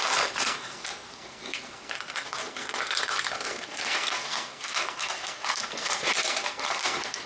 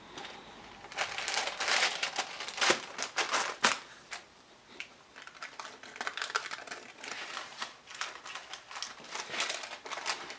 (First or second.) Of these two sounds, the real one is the second